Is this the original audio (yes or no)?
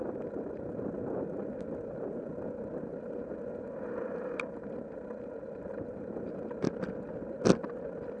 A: yes